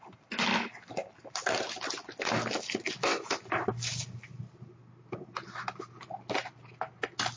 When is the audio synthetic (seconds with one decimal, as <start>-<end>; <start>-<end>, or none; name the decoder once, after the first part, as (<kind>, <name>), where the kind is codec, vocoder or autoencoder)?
none